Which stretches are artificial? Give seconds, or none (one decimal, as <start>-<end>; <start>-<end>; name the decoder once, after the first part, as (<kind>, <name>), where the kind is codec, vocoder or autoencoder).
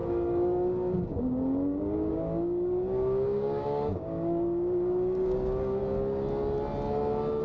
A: 0.0-5.8 (codec, DAC)